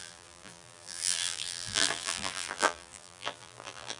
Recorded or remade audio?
remade